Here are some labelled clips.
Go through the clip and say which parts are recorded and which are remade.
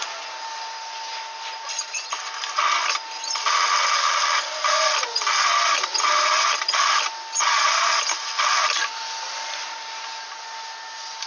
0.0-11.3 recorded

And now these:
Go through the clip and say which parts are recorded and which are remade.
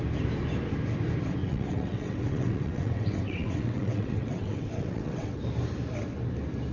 0.0-1.4 recorded; 1.4-5.4 remade; 5.4-6.7 recorded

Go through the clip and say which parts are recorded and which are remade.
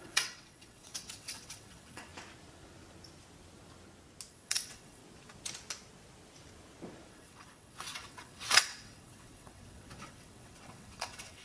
0.0-2.1 remade; 2.1-4.3 recorded; 4.3-5.0 remade; 5.0-7.1 recorded; 7.1-11.4 remade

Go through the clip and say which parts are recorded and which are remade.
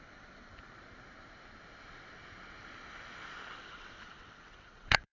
0.0-0.5 remade; 0.5-3.6 recorded; 3.6-5.1 remade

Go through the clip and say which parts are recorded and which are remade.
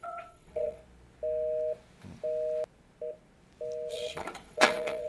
0.0-0.8 remade; 0.8-3.9 recorded; 3.9-5.1 remade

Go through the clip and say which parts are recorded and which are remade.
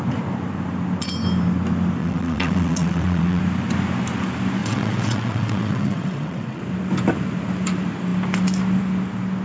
0.0-2.0 recorded; 2.0-3.4 remade; 3.4-4.6 recorded; 4.6-6.6 remade; 6.6-9.4 recorded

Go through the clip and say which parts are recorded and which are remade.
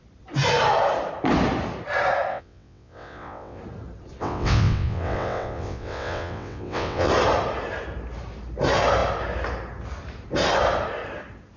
0.0-2.3 recorded; 2.3-3.6 remade; 3.6-4.2 recorded; 4.2-7.1 remade; 7.1-11.6 recorded